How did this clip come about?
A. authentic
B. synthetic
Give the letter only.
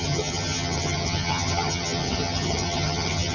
B